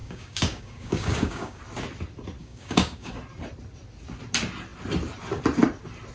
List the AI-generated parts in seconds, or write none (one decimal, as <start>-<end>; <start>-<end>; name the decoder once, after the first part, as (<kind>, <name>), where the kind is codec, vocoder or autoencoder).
0.0-1.6 (codec, DAC); 2.4-3.2